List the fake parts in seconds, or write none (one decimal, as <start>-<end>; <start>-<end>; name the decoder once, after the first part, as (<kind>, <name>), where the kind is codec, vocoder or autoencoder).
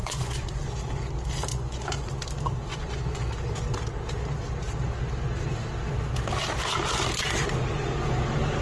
0.0-0.7 (vocoder, Vocos); 1.5-2.1; 2.7-3.3